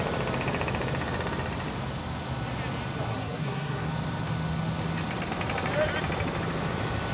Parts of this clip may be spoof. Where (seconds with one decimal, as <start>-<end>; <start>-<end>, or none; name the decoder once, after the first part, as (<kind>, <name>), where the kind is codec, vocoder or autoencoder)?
3.1-3.9 (codec, SNAC)